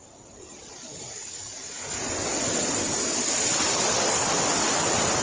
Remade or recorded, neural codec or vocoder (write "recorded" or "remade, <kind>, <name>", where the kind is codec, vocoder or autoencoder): recorded